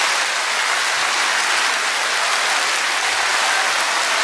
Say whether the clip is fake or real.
real